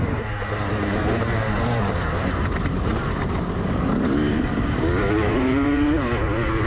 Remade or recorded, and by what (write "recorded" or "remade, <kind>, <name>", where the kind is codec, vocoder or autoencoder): remade, vocoder, BigVGAN v2